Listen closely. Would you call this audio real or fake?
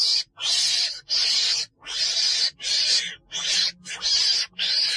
real